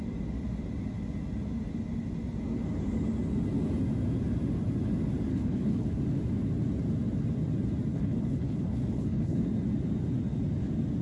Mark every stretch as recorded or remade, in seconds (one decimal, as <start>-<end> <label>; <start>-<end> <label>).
0.0-5.3 recorded; 5.3-6.0 remade; 6.0-7.9 recorded; 7.9-9.4 remade; 9.4-11.0 recorded